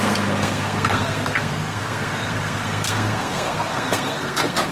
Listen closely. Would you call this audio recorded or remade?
remade